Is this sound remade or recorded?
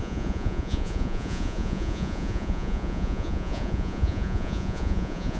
remade